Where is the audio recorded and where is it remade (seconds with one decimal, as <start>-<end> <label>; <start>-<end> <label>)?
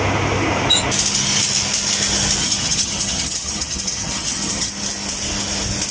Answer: 0.0-2.4 recorded; 2.4-4.7 remade; 4.7-5.9 recorded